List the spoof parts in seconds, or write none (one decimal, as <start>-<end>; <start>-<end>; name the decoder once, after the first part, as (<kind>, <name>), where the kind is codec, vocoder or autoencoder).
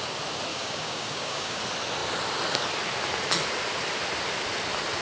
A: 0.5-1.6 (codec, DAC)